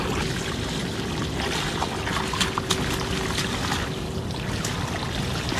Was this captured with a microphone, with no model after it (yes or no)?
yes